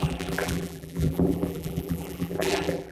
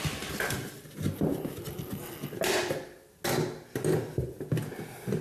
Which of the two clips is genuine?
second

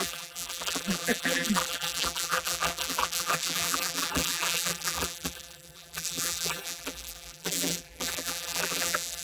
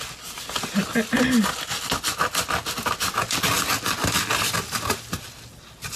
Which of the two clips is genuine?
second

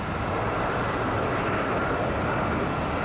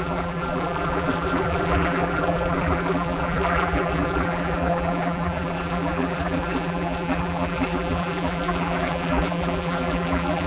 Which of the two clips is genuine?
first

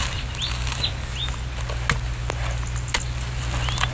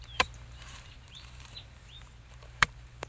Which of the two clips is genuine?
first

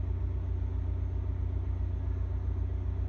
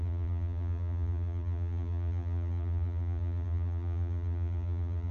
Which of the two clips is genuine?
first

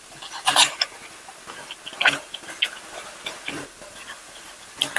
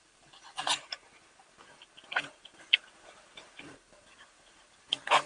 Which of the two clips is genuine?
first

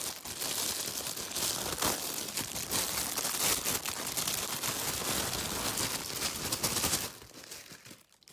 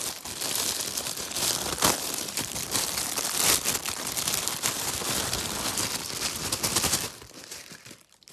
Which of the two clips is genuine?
first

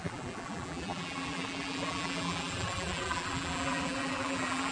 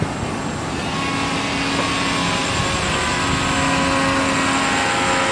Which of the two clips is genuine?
second